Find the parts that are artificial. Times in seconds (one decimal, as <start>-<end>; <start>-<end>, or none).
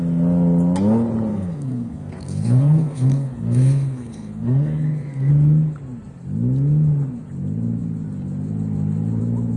1.3-5.3